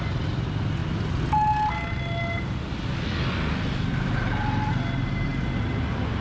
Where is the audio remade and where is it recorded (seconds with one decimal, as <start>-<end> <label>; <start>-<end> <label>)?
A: 0.0-6.2 recorded